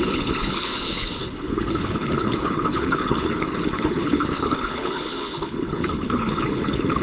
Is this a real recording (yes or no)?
no